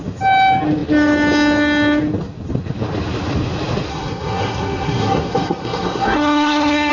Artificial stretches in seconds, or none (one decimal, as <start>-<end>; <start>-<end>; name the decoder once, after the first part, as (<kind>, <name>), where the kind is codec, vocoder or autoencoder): 3.9-6.9 (codec, SNAC)